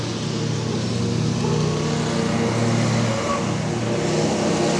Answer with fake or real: real